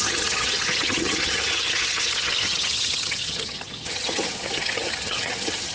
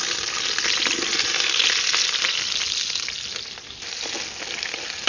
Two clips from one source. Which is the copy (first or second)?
first